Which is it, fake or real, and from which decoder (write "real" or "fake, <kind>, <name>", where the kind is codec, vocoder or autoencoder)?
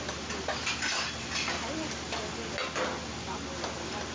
real